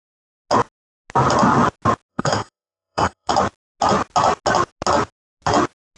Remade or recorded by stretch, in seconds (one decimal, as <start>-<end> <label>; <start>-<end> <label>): 0.0-2.1 recorded; 2.1-3.3 remade; 3.3-6.0 recorded